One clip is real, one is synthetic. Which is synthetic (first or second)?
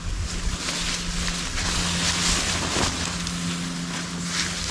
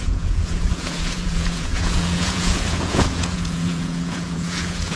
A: second